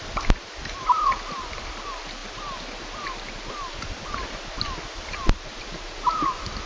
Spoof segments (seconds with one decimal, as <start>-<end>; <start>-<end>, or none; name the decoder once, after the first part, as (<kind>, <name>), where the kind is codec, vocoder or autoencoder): none